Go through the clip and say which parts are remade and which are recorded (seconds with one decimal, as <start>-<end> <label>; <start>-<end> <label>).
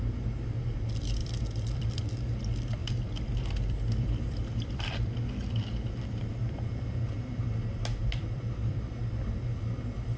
0.0-1.2 recorded; 1.2-2.0 remade; 2.0-2.8 recorded; 2.8-7.4 remade; 7.4-8.0 recorded; 8.0-8.9 remade; 8.9-10.2 recorded